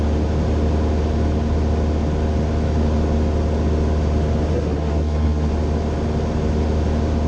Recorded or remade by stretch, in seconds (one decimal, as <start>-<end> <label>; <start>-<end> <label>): 0.0-4.5 recorded; 4.5-5.5 remade; 5.5-7.3 recorded

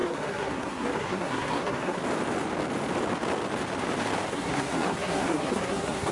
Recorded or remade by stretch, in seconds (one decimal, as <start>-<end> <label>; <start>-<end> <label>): 0.0-2.0 remade; 2.0-4.3 recorded; 4.3-6.1 remade